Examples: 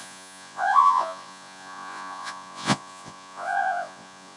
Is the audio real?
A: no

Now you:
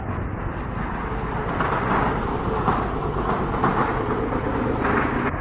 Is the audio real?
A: yes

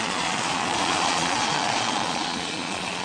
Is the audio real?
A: no